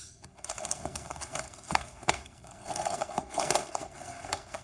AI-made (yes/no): yes